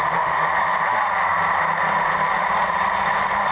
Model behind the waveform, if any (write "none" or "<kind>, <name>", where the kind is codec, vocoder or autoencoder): none